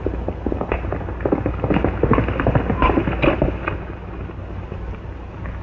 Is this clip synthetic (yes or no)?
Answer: no